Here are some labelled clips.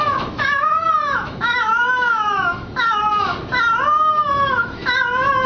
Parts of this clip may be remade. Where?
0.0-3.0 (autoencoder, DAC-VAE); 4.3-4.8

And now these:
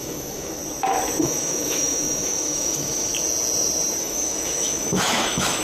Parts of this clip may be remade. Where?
0.0-0.6 (autoencoder, DAC-VAE); 1.2-3.1; 4.0-5.6

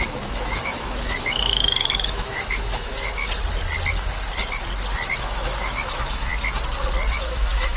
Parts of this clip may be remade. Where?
0.0-3.2 (autoencoder, DAC-VAE); 5.1-6.3; 7.2-7.8

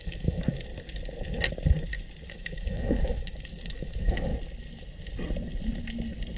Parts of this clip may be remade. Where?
0.0-0.7 (autoencoder, DAC-VAE); 2.3-4.3